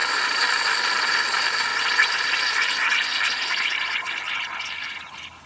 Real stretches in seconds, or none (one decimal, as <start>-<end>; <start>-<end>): 0.0-5.5